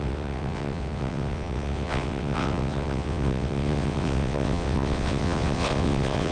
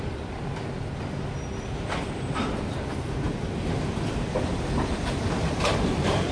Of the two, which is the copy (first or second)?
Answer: first